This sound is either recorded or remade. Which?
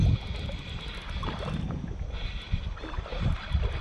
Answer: recorded